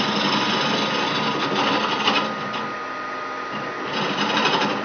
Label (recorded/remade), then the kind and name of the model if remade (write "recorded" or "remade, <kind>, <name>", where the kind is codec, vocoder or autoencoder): recorded